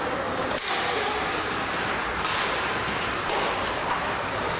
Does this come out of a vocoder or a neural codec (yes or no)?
yes